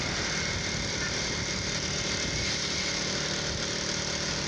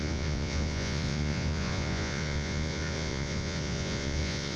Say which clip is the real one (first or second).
first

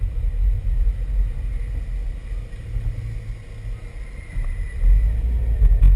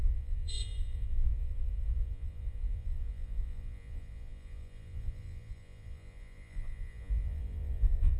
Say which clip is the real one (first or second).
first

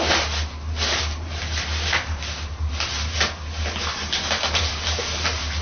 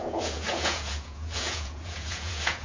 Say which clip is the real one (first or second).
first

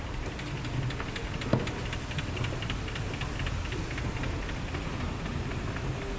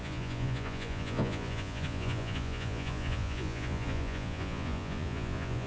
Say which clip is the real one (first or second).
first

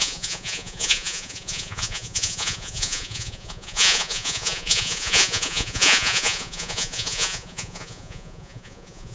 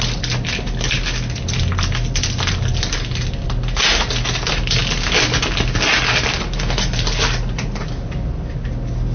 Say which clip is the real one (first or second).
second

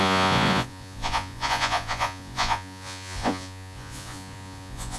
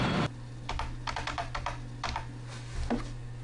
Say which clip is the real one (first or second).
second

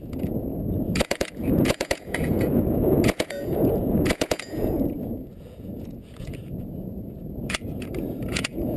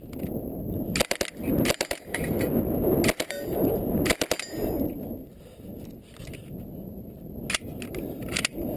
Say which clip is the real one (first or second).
second